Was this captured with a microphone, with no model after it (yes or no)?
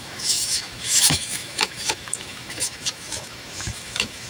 no